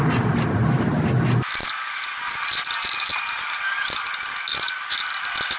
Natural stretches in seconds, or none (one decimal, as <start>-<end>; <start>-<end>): 0.0-5.6